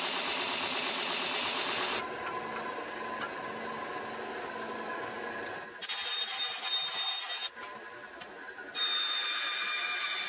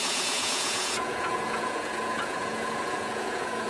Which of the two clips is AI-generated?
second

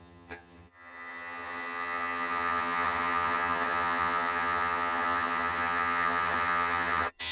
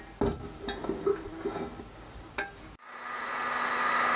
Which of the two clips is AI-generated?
first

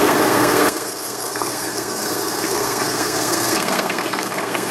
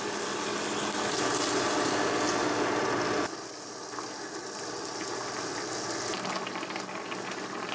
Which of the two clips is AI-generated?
first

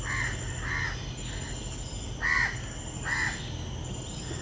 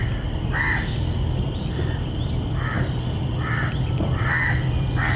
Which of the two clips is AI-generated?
second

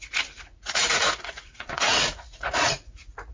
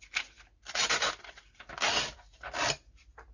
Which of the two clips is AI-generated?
first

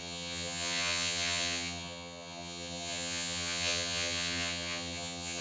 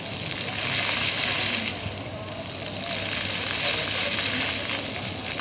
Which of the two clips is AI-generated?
first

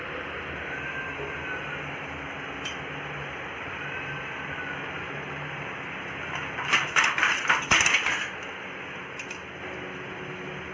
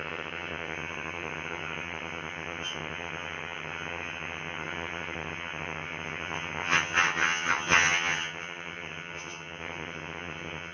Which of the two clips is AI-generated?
second